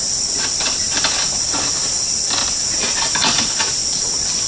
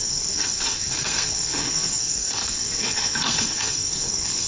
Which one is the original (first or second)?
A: first